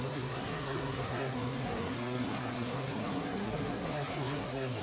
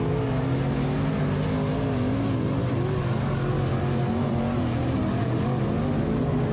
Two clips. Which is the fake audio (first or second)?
first